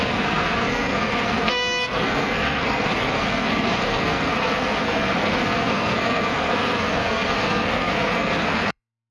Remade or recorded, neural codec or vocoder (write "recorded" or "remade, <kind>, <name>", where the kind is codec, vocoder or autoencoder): remade, codec, SNAC